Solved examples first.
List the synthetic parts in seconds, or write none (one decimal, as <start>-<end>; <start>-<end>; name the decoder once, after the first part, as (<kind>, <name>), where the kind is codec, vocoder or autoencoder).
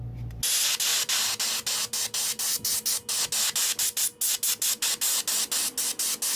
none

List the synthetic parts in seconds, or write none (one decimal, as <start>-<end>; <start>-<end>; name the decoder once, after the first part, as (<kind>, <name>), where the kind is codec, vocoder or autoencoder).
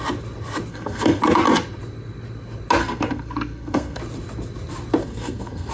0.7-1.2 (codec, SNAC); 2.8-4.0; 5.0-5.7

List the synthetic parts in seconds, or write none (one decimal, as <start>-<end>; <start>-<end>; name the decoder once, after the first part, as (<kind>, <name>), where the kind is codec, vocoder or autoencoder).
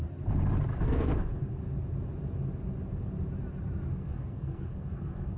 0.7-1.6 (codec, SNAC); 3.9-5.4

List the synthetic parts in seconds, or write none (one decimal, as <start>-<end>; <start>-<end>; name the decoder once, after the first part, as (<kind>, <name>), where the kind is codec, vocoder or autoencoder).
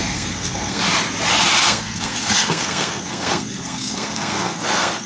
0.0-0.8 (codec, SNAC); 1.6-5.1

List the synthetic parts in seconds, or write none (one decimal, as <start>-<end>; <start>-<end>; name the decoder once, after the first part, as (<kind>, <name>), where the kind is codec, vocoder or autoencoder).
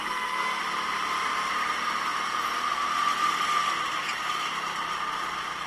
0.0-0.6 (codec, SNAC)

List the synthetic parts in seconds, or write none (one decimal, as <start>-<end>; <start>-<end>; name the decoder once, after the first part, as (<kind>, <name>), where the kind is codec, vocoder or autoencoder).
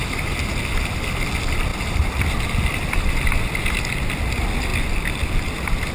none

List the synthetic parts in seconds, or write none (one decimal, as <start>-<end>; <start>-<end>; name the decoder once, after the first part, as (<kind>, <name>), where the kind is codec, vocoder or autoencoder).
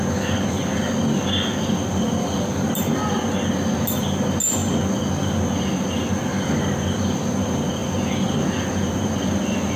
none